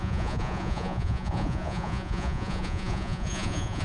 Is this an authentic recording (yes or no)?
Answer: no